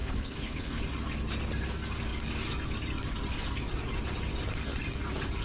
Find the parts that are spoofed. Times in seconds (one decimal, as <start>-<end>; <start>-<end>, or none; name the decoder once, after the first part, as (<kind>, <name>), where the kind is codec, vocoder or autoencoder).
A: 0.0-0.8 (codec, HILCodec)